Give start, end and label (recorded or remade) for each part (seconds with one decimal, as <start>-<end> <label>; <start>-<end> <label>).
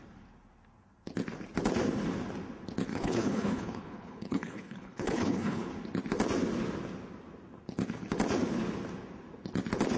0.0-2.9 recorded; 2.9-5.7 remade; 5.7-10.0 recorded